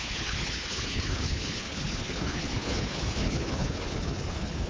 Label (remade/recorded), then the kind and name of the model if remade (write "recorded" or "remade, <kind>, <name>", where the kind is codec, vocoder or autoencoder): remade, codec, HILCodec